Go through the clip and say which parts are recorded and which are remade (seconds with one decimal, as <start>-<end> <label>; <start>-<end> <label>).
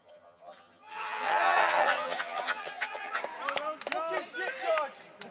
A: 0.0-3.2 remade; 3.2-5.3 recorded